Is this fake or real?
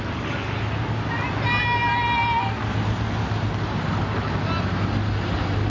real